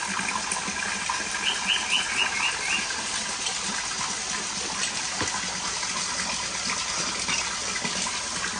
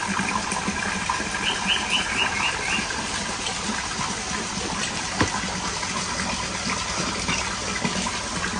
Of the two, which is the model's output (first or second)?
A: second